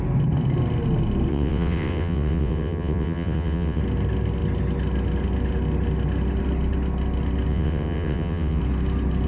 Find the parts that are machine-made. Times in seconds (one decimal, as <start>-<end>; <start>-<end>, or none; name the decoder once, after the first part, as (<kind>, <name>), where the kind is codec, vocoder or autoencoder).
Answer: 1.3-3.8 (vocoder, WaveNeXt); 7.5-8.6